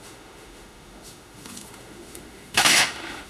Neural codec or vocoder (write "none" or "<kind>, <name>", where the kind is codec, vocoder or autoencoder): autoencoder, DAC-VAE